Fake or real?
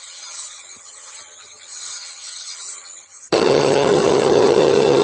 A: fake